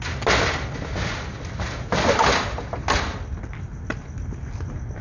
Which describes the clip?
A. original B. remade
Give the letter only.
A